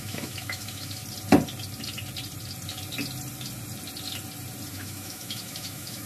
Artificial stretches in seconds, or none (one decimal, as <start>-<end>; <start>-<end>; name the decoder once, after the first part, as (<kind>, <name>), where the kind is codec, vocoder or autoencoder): 0.0-1.0 (autoencoder, DAC-VAE); 4.7-6.1